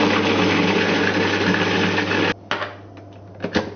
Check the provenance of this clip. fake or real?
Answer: real